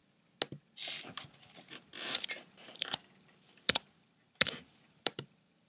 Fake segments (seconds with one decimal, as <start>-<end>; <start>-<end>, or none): 1.0-5.7